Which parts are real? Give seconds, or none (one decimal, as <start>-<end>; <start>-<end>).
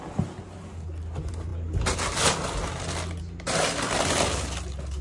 0.0-5.0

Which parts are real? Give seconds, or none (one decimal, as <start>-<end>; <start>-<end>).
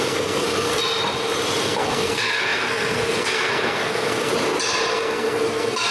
0.7-1.6; 4.3-4.9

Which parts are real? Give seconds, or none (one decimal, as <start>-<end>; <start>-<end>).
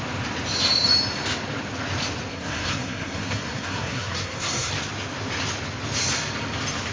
0.0-2.3; 4.7-6.9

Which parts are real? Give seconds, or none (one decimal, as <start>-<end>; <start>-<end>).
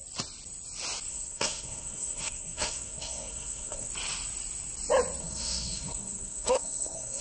0.0-1.1; 3.9-5.2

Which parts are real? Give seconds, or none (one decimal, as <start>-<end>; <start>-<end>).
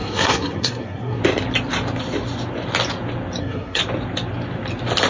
1.2-3.4; 3.8-5.1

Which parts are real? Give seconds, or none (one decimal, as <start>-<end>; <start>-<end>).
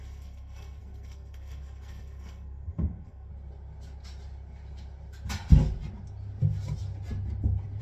3.3-7.8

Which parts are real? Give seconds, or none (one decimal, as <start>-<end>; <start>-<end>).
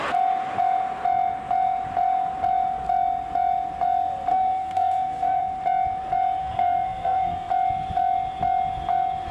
0.0-4.3; 5.4-6.4; 7.5-9.3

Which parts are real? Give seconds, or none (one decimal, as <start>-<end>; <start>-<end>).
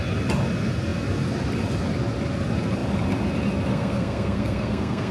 0.0-3.7